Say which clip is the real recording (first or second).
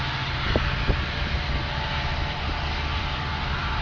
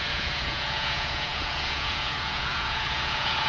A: first